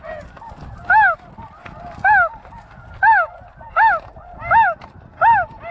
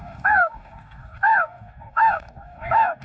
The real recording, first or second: first